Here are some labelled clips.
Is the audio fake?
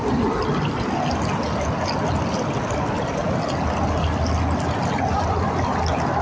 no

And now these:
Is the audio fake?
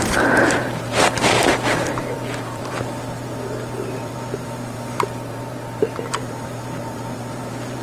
yes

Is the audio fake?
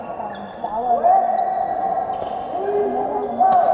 no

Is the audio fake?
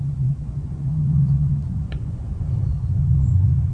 yes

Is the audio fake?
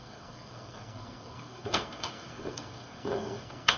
yes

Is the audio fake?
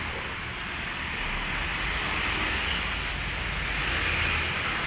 no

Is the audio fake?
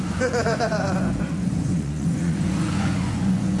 yes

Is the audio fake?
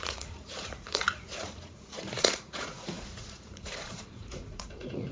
yes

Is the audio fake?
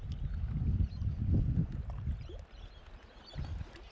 no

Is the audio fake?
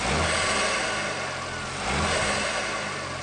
no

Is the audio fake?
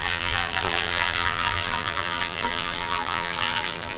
yes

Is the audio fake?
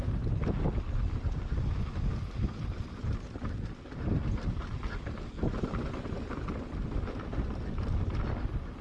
no